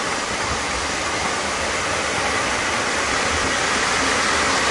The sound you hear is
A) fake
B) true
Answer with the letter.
B